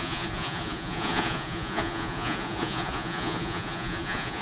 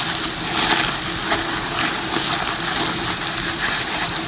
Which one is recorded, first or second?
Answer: second